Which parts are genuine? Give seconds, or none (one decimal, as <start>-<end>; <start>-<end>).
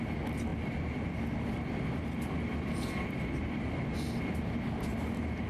0.0-0.5; 3.8-5.5